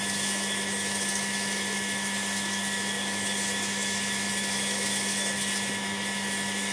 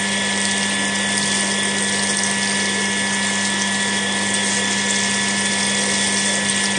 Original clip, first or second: second